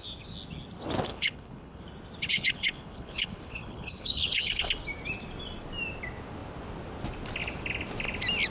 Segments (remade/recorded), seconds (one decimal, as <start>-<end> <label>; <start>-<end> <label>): 0.0-1.1 recorded; 1.1-1.8 remade; 1.8-2.3 recorded; 2.3-4.7 remade; 4.7-8.5 recorded